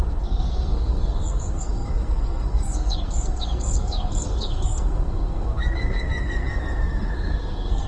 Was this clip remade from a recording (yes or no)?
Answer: yes